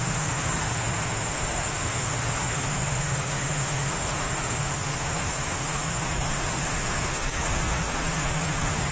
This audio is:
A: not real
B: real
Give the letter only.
A